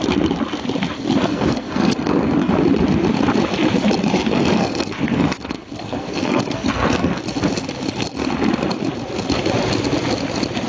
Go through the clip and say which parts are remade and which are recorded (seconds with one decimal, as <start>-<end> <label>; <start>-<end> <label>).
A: 0.0-1.3 recorded; 1.3-2.5 remade; 2.5-4.2 recorded; 4.2-7.2 remade; 7.2-10.7 recorded